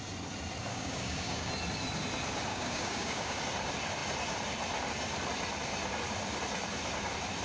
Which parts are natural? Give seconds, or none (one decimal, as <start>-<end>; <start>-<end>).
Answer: 0.0-0.7; 1.5-2.5; 3.4-7.4